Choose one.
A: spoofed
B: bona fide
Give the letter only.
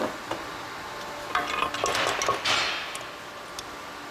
B